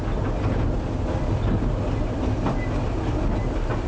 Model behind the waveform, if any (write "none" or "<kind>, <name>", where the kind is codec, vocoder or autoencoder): none